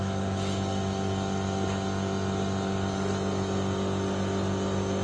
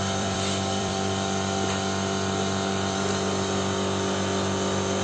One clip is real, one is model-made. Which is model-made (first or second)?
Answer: second